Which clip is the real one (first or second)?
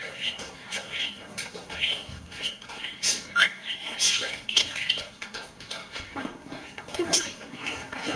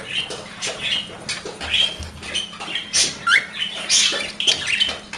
second